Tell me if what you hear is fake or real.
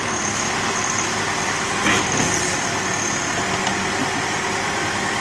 real